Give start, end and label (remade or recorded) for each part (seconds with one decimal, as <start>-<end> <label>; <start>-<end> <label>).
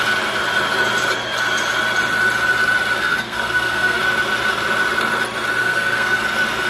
0.0-3.0 recorded; 3.0-4.0 remade; 4.0-5.6 recorded; 5.6-6.2 remade; 6.2-6.7 recorded